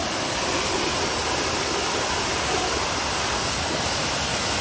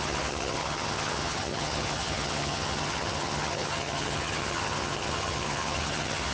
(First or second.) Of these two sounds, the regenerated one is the second